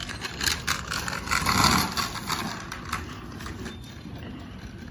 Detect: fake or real real